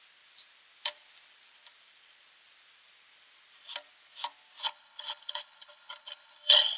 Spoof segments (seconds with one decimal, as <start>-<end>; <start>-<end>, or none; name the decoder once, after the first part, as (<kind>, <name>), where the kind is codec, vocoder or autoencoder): 4.6-6.8 (codec, HILCodec)